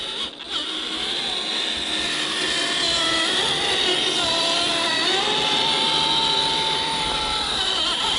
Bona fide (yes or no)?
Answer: yes